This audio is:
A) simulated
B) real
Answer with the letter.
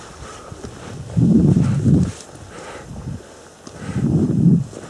B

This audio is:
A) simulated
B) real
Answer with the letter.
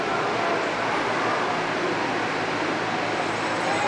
B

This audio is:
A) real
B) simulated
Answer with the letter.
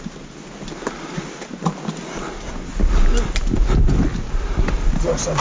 A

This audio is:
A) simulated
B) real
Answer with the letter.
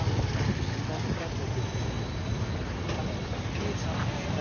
B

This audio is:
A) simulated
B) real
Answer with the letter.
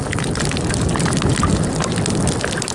B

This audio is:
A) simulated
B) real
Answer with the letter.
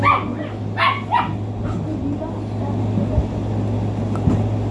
B